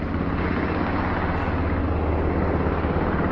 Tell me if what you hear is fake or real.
real